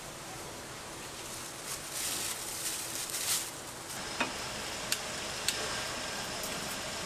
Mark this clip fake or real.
real